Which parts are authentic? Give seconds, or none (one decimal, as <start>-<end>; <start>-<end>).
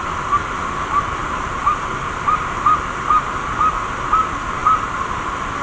0.0-5.6